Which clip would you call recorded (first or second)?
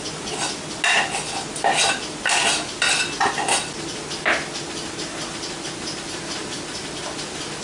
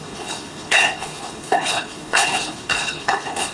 first